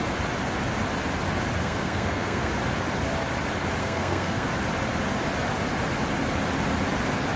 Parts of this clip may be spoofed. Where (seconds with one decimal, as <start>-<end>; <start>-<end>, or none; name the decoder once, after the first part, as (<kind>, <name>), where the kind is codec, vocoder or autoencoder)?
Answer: 1.6-2.5 (codec, SNAC); 3.8-4.5